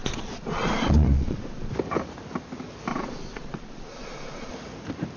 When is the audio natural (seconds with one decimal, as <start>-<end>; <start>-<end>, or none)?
1.7-2.9; 4.5-5.2